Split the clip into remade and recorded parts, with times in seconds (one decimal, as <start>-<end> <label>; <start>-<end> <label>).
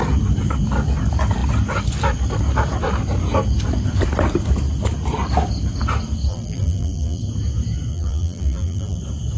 0.0-6.3 recorded; 6.3-7.2 remade; 7.2-7.9 recorded; 7.9-9.0 remade; 9.0-9.4 recorded